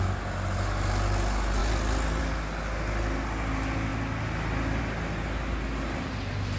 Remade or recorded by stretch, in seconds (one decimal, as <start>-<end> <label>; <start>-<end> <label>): 0.0-6.6 recorded